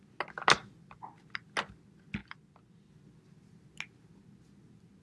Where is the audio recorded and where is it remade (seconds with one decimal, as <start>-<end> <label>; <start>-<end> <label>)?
0.0-0.6 recorded; 0.6-1.1 remade; 1.1-2.2 recorded; 2.2-2.9 remade; 2.9-5.0 recorded

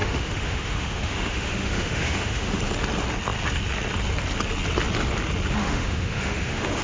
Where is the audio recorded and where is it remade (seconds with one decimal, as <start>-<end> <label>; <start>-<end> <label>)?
0.0-2.6 remade; 2.6-5.6 recorded; 5.6-6.8 remade

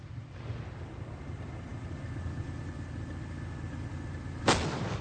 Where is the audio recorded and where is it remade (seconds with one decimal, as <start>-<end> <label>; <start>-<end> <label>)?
0.0-5.0 recorded

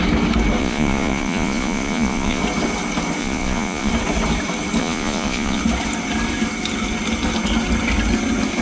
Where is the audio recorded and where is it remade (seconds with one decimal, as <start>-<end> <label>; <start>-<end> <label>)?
0.0-0.6 recorded; 0.6-2.4 remade; 2.4-3.2 recorded; 3.2-3.9 remade; 3.9-4.8 recorded; 4.8-5.6 remade; 5.6-8.6 recorded